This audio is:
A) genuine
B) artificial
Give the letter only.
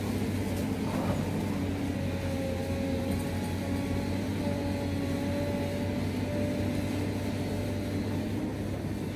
A